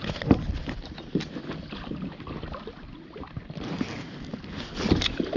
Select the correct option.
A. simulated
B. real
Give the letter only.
B